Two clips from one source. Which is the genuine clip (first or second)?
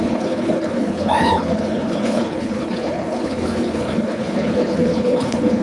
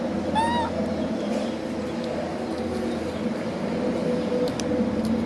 second